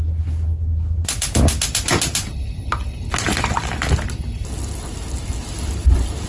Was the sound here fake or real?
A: real